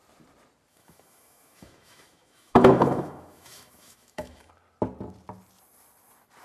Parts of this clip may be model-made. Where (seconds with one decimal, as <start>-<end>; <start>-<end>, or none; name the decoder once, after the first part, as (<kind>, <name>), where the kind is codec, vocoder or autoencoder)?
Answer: 0.7-4.5 (autoencoder, DAC-VAE)